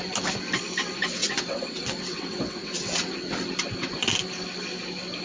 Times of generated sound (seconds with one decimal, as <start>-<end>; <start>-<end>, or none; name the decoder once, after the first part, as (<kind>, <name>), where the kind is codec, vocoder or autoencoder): 1.2-3.0 (vocoder, WaveNeXt)